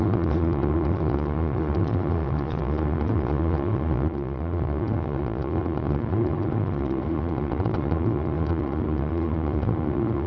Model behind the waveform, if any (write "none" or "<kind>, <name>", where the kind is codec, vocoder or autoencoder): vocoder, Vocos